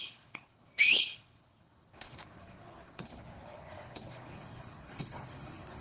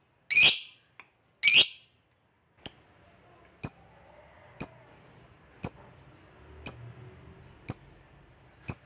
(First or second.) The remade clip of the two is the first